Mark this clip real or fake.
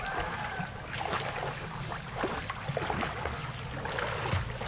fake